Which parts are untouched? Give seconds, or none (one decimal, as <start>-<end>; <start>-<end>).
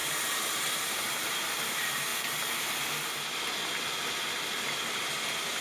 2.1-5.6